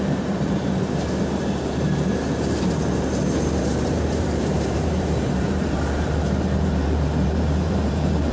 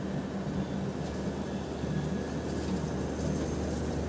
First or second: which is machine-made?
first